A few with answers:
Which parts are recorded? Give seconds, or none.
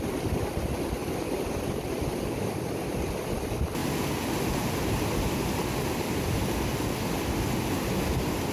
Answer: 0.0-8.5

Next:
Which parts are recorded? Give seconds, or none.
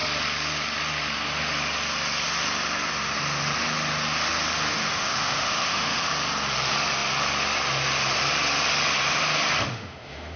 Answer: 0.0-4.7; 6.1-9.7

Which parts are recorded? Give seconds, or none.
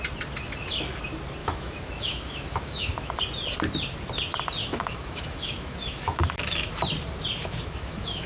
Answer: 0.0-1.4; 3.2-4.6; 6.7-7.4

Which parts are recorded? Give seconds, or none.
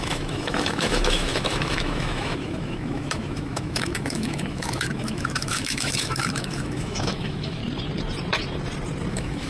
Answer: 7.6-9.1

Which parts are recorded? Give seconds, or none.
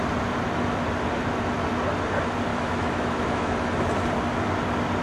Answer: 0.0-2.5; 3.7-5.0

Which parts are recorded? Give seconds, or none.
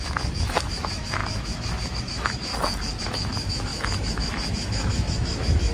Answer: 2.5-3.0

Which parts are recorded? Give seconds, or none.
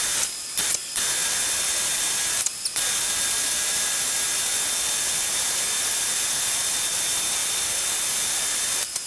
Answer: 0.0-9.1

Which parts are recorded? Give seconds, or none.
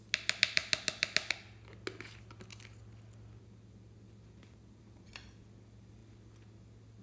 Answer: 0.0-7.0